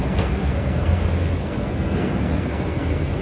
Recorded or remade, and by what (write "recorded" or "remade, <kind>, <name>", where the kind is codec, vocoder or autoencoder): remade, codec, SNAC